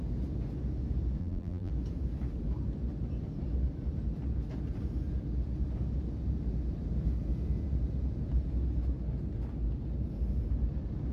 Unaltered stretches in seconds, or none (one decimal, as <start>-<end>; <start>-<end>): 0.0-1.2; 1.7-11.1

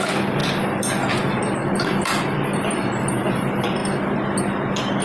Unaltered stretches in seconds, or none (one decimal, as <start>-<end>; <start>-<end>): 0.0-0.4; 3.4-5.0